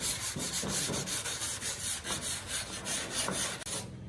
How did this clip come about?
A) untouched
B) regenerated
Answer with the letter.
A